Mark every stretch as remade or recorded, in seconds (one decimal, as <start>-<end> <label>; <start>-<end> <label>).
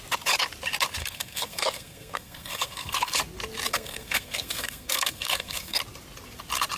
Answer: 0.0-1.0 recorded; 1.0-3.2 remade; 3.2-3.7 recorded; 3.7-5.8 remade; 5.8-6.8 recorded